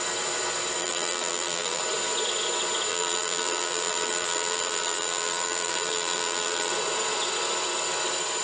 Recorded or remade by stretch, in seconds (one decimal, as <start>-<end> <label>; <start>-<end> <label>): 0.0-0.8 recorded; 0.8-1.8 remade; 1.8-2.9 recorded; 2.9-6.7 remade; 6.7-8.4 recorded